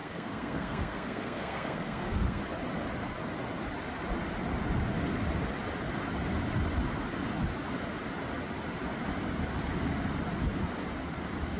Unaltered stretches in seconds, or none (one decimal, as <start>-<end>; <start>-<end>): 2.4-11.6